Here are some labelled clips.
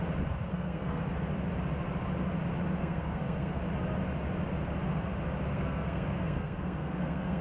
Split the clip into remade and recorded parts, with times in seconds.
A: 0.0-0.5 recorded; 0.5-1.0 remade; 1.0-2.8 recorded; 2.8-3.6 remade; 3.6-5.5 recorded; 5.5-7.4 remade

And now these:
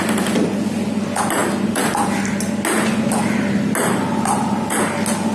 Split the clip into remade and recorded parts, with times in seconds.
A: 0.0-5.3 recorded

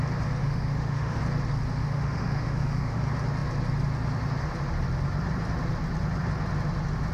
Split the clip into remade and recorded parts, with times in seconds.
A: 0.0-0.4 recorded; 0.4-1.2 remade; 1.2-1.8 recorded; 1.8-3.0 remade; 3.0-7.1 recorded

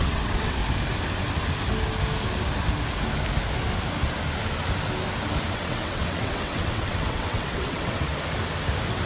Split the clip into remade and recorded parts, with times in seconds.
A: 0.0-0.6 remade; 0.6-5.5 recorded; 5.5-8.1 remade; 8.1-9.1 recorded

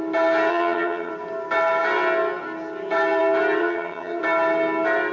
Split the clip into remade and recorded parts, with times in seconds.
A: 0.0-0.5 recorded; 0.5-1.1 remade; 1.1-3.6 recorded; 3.6-4.2 remade; 4.2-5.1 recorded

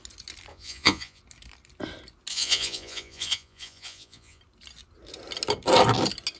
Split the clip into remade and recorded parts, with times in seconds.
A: 0.0-0.5 recorded; 0.5-1.2 remade; 1.2-2.3 recorded; 2.3-4.4 remade; 4.4-6.4 recorded